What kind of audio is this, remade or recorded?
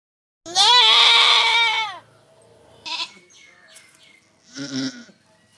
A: recorded